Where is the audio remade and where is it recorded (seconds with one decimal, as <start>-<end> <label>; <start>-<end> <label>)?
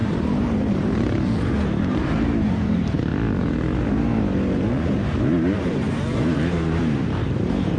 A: 0.0-3.1 remade; 3.1-3.9 recorded; 3.9-7.8 remade